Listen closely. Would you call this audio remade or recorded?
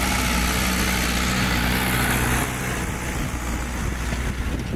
recorded